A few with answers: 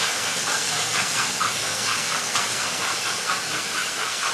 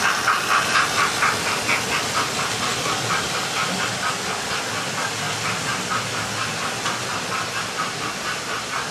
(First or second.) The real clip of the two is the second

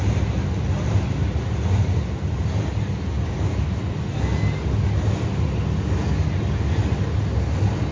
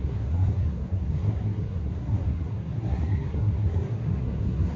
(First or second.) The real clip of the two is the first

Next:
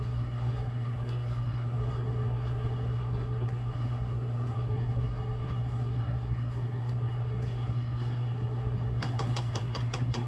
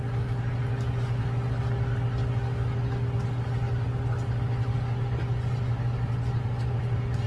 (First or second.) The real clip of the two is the second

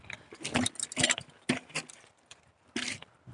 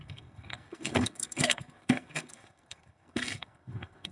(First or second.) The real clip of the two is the first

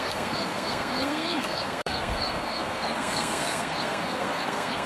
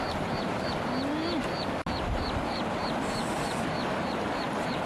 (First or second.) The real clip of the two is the second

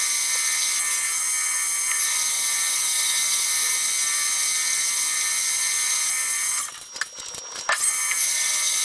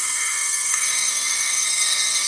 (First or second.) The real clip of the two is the first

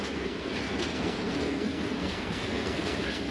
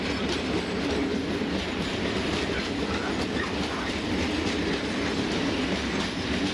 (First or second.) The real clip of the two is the second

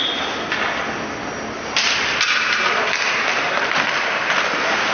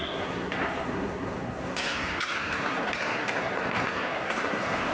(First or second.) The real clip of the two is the first